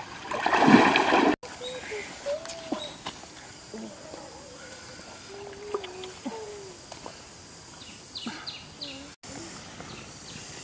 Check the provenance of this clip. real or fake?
real